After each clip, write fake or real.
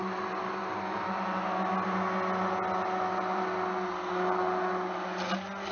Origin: real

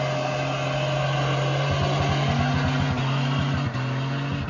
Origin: real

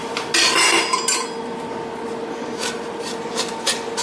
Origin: real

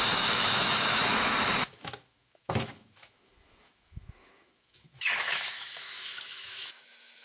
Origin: fake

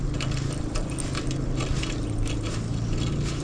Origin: real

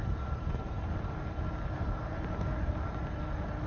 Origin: real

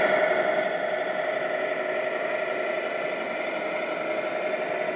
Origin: real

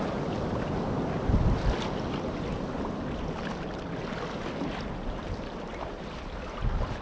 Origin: real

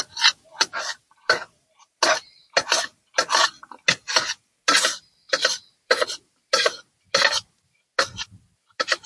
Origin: real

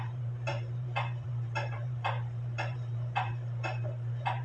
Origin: fake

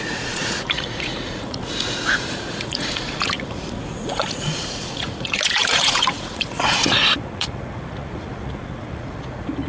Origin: fake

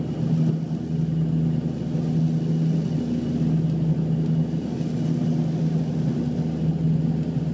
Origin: real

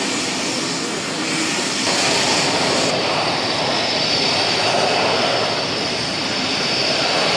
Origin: real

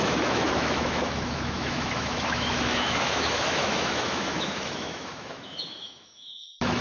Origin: fake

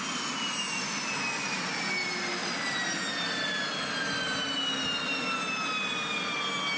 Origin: real